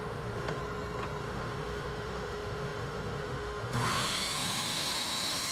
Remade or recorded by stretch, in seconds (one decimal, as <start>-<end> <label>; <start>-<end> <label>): 0.0-0.6 remade; 0.6-1.2 recorded; 1.2-5.5 remade